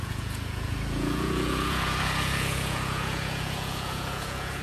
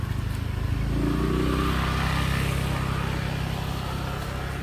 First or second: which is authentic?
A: second